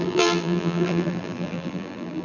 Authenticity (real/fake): fake